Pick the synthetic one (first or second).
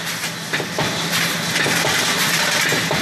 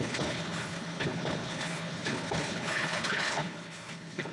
second